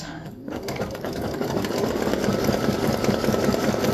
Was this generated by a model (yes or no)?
yes